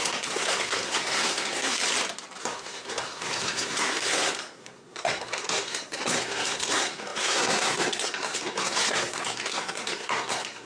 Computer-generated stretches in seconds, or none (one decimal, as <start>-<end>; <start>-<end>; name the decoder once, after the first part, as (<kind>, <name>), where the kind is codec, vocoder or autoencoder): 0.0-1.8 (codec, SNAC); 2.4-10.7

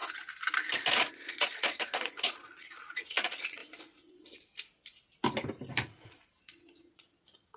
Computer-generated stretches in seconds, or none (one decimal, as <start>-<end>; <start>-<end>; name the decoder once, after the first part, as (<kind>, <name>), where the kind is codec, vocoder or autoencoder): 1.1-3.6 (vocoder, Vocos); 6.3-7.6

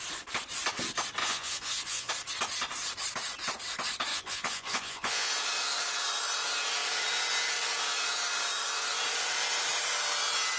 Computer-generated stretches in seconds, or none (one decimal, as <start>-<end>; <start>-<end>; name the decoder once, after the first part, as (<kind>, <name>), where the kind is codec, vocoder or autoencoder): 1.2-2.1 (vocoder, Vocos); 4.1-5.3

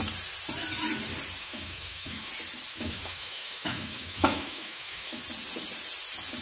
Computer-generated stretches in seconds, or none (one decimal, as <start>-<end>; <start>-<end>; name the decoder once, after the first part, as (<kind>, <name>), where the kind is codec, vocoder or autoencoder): 1.4-2.3 (autoencoder, DAC-VAE); 2.7-5.2

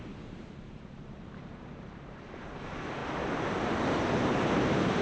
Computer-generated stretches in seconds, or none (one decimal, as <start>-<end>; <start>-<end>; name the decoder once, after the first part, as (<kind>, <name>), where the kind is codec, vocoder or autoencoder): 0.0-3.0 (vocoder, BigVGAN v2); 4.1-5.0